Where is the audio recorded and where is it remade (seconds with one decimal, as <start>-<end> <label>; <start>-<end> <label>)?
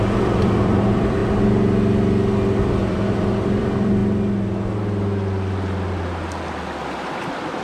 0.0-1.2 remade; 1.2-2.6 recorded; 2.6-4.0 remade; 4.0-7.6 recorded